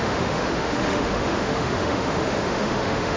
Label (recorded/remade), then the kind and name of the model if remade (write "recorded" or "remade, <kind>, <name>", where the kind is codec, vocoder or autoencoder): remade, autoencoder, DAC-VAE